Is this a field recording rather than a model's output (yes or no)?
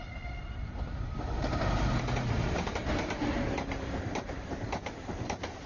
no